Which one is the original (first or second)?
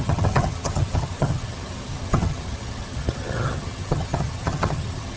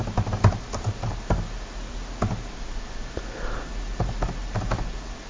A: second